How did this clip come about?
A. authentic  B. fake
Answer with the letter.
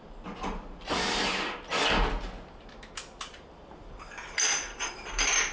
B